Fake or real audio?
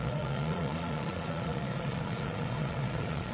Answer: fake